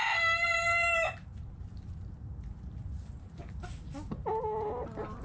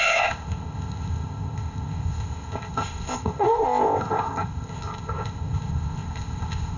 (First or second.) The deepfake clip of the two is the second